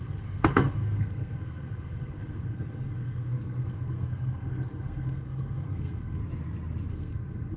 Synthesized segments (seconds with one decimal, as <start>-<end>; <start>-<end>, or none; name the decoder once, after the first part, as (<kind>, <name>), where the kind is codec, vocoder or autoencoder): 0.0-6.2 (codec, SNAC); 6.9-7.6